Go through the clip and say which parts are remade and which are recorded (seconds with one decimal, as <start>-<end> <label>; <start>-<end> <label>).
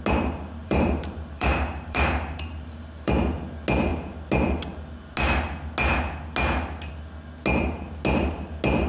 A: 0.0-0.6 recorded; 0.6-3.1 remade; 3.1-8.9 recorded